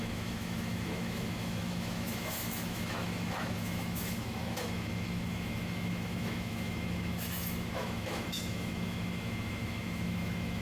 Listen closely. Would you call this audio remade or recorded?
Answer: remade